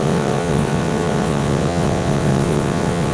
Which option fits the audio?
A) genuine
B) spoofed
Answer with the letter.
B